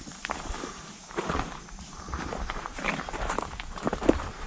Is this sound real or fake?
fake